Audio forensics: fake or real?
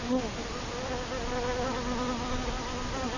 real